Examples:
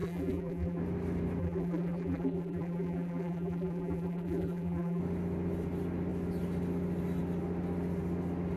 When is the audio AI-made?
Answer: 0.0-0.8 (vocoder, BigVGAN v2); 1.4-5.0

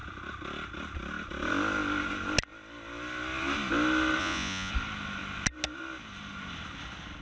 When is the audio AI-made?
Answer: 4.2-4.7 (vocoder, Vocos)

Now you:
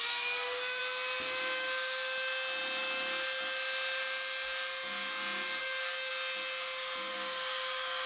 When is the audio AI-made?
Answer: 0.0-0.8 (codec, DAC); 5.6-6.1; 7.1-8.1

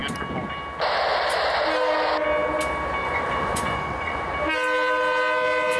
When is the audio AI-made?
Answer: 3.0-4.3 (vocoder, Vocos)